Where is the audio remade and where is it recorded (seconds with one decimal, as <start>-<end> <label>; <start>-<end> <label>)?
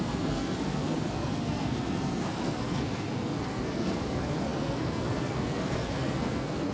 0.0-6.7 remade